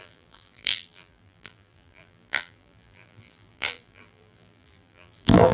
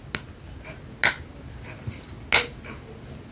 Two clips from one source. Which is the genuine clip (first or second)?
second